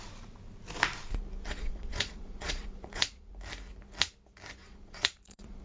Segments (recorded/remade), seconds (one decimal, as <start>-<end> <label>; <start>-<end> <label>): 0.0-1.4 recorded; 1.4-3.3 remade; 3.3-4.6 recorded; 4.6-5.6 remade